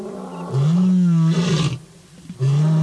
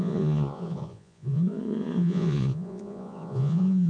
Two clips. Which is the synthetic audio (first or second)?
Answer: second